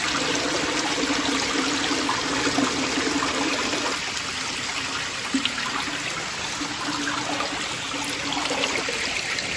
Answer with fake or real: real